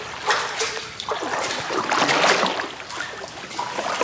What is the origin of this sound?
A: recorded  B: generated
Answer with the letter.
A